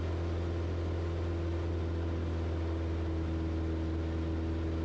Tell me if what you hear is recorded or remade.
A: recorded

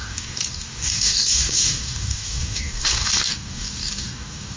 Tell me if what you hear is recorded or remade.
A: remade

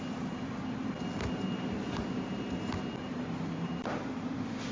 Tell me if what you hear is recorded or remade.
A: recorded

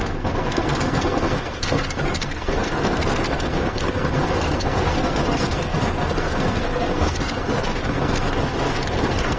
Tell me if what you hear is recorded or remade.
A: remade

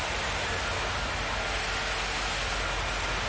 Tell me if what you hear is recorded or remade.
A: recorded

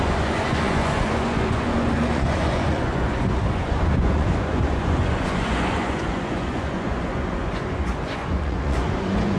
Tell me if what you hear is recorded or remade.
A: remade